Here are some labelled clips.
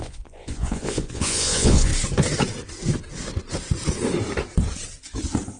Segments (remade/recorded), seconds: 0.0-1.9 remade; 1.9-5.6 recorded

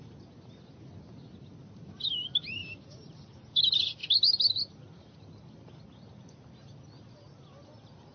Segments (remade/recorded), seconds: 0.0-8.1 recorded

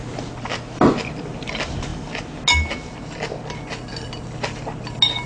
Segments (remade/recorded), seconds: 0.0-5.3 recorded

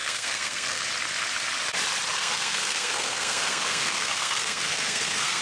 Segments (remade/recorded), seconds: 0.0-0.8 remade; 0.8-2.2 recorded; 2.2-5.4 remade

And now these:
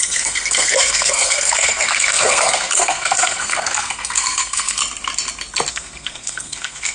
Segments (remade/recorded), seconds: 0.0-4.8 remade; 4.8-5.7 recorded; 5.7-6.9 remade

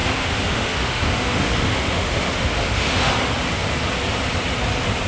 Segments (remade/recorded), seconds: 0.0-3.1 remade; 3.1-5.1 recorded

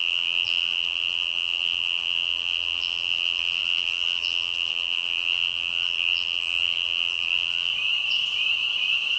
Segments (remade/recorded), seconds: 0.0-7.7 remade; 7.7-9.2 recorded

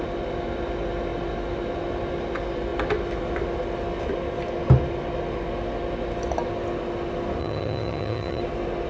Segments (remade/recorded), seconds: 0.0-7.4 recorded; 7.4-8.4 remade; 8.4-8.9 recorded